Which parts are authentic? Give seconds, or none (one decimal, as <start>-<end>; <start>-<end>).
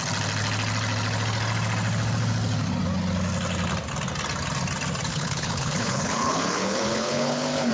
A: 0.0-5.1